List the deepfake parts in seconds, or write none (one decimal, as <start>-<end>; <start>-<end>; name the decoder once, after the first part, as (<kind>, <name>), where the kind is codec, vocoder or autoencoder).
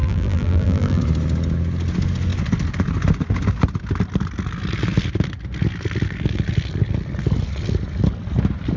0.0-1.0 (vocoder, BigVGAN v2)